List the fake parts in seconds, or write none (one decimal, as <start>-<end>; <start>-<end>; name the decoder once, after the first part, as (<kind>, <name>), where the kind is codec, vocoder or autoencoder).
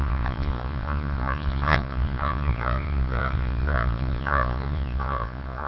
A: 0.0-5.7 (vocoder, Vocos)